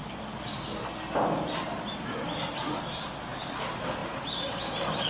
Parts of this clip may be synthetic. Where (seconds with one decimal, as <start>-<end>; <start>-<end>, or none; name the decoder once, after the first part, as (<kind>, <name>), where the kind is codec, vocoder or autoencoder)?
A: none